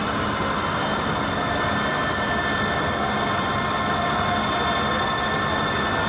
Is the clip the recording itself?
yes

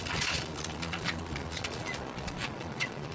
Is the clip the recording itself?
no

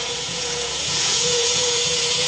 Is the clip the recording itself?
no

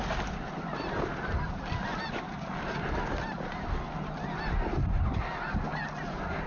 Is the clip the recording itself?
yes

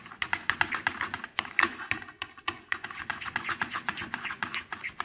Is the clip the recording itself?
no